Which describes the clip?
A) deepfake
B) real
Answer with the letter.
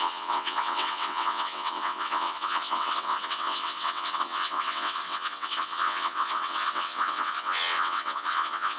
A